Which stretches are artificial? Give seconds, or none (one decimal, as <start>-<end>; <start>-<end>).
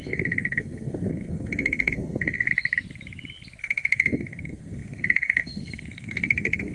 0.0-2.5; 3.6-6.7